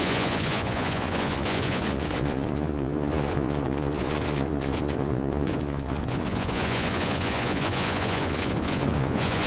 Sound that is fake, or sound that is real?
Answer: fake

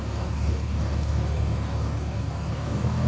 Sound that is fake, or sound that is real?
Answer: fake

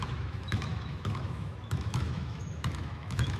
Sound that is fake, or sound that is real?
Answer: fake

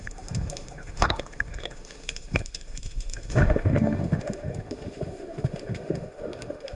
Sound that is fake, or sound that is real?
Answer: fake